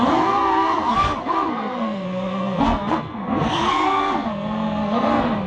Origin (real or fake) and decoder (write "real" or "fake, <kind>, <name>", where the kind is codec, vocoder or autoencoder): fake, codec, SNAC